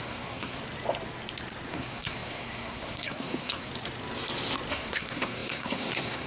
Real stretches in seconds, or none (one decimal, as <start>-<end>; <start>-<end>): 0.6-1.7; 3.7-4.7